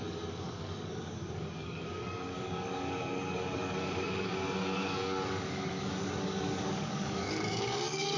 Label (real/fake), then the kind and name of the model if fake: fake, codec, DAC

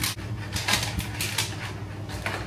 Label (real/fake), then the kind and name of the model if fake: real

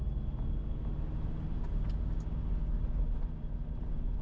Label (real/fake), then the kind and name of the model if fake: real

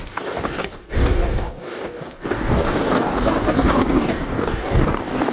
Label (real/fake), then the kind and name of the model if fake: fake, codec, DAC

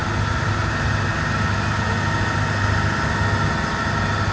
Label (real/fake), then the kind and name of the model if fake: real